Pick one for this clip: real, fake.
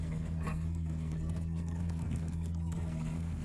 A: fake